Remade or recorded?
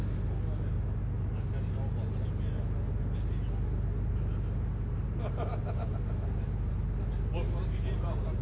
recorded